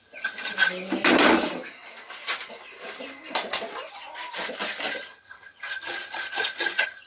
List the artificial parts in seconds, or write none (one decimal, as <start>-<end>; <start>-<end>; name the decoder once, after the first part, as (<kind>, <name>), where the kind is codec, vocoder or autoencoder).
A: 0.0-0.7 (vocoder, HiFi-GAN); 4.9-7.1